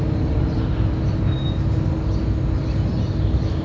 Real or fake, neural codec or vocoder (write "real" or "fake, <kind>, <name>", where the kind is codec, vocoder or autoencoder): real